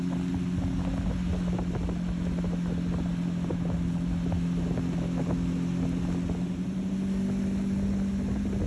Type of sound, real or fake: real